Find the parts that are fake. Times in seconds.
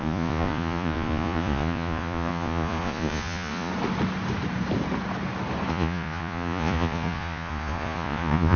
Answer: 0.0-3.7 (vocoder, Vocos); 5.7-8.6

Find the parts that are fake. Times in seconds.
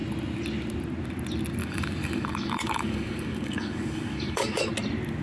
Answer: 1.6-4.7 (codec, DAC)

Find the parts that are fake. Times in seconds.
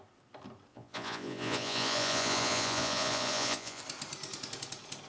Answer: 0.7-3.8 (vocoder, Vocos)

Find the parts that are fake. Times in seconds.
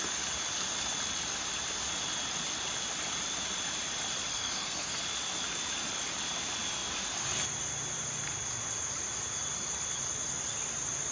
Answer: 4.3-4.9 (codec, SNAC)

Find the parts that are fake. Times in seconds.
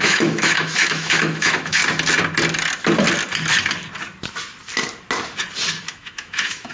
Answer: 0.0-1.8 (autoencoder, DAC-VAE); 5.8-6.7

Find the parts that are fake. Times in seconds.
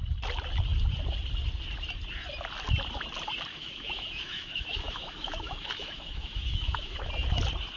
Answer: 3.5-7.1 (autoencoder, DAC-VAE)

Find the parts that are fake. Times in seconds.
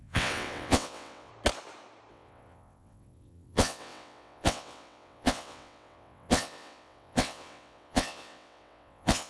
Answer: 0.0-1.3 (vocoder, WaveNeXt); 2.1-9.3